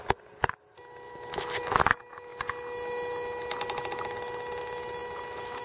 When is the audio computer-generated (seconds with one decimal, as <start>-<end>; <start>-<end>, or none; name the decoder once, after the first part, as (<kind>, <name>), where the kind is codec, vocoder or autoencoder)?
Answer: none